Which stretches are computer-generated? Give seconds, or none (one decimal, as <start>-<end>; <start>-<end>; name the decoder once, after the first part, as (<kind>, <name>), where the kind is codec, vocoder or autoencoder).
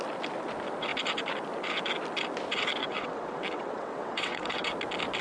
2.8-4.7 (vocoder, WaveNeXt)